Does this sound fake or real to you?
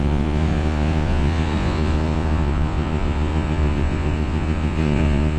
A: fake